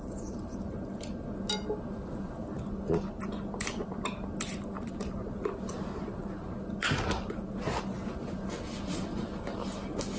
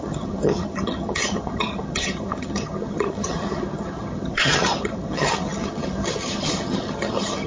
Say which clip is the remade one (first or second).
second